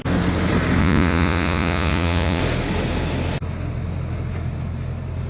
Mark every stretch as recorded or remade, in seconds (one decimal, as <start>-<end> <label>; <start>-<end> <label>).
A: 0.0-0.8 recorded; 0.8-2.4 remade; 2.4-5.3 recorded

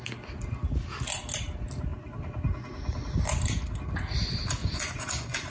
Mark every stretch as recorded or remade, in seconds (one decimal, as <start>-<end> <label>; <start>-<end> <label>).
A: 0.0-4.6 recorded; 4.6-5.5 remade

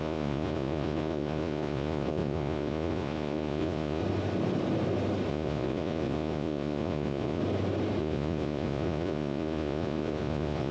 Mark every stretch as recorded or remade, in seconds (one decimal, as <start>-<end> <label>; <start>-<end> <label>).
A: 0.0-4.0 remade; 4.0-5.3 recorded; 5.3-7.4 remade; 7.4-8.0 recorded; 8.0-10.7 remade

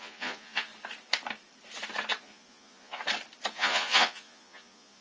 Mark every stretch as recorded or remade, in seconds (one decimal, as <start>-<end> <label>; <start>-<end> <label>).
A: 0.0-0.7 remade; 0.7-2.2 recorded; 2.2-3.0 remade; 3.0-3.5 recorded; 3.5-5.0 remade

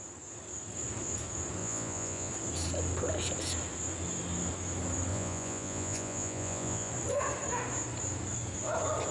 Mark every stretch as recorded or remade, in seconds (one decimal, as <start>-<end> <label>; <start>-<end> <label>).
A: 0.0-1.6 recorded; 1.6-2.3 remade; 2.3-5.1 recorded; 5.1-6.9 remade; 6.9-9.1 recorded

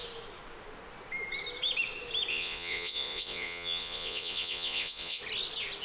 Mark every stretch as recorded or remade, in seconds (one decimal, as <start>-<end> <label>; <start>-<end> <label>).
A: 0.0-2.3 recorded; 2.3-5.2 remade; 5.2-5.8 recorded

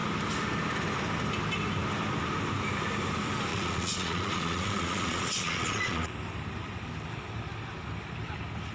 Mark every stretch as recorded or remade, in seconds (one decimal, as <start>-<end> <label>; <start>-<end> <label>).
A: 0.0-3.5 recorded; 3.5-6.1 remade; 6.1-8.7 recorded